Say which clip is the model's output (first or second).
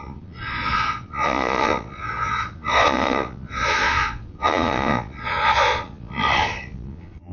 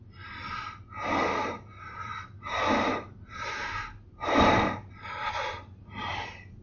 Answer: first